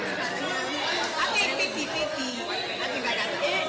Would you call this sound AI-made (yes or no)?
no